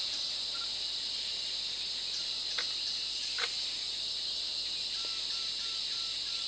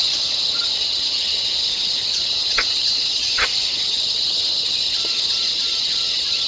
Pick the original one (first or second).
first